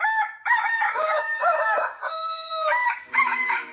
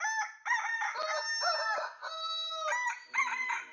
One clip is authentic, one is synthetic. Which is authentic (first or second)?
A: second